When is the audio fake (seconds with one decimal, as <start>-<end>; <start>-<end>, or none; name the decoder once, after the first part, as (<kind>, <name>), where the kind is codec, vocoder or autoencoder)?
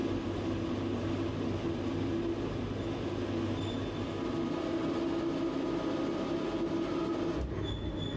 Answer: none